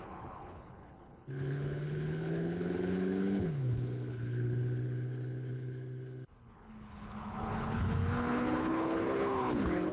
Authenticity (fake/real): fake